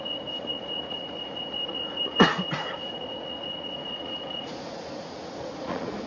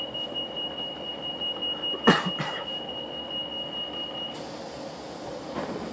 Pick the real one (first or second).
second